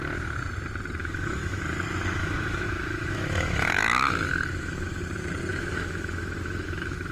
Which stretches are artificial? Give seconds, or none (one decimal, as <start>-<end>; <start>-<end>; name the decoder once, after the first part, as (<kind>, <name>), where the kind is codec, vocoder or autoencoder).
1.0-1.6 (autoencoder, DAC-VAE); 2.2-5.0; 5.5-7.1